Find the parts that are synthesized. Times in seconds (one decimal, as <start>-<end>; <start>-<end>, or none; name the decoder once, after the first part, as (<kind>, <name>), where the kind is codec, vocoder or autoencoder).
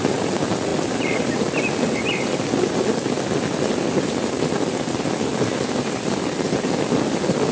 none